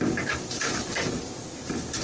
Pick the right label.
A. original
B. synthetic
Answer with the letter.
A